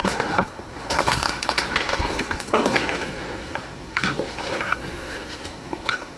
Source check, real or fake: fake